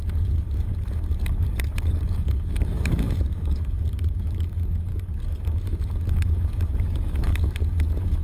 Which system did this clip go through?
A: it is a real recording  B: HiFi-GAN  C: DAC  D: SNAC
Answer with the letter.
C